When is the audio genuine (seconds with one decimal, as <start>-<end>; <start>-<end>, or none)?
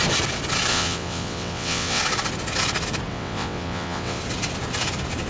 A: 0.0-0.7; 2.0-3.1; 4.2-5.3